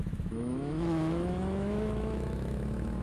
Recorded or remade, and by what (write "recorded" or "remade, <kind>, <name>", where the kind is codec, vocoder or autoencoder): remade, autoencoder, DAC-VAE